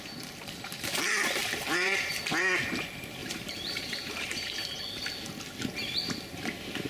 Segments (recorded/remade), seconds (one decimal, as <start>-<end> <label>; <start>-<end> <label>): 0.0-1.4 recorded; 1.4-2.2 remade; 2.2-3.2 recorded; 3.2-4.8 remade; 4.8-6.9 recorded